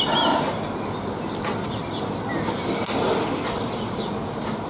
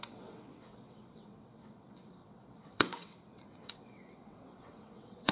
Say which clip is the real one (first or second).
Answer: first